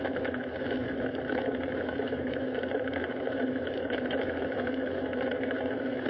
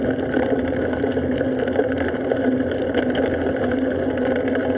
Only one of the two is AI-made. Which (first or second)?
first